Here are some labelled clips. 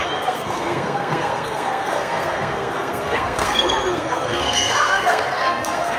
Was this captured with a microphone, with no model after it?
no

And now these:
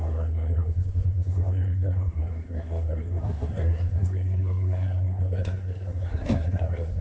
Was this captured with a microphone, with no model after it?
no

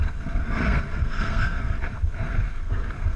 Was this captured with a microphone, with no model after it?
no